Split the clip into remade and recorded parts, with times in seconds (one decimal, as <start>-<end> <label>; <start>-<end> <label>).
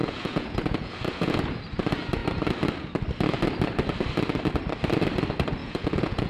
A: 0.0-1.4 remade; 1.4-5.6 recorded; 5.6-6.3 remade